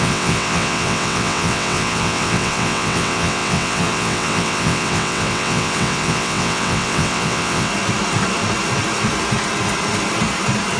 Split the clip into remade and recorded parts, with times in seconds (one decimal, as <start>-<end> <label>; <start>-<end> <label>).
0.0-7.7 remade; 7.7-10.8 recorded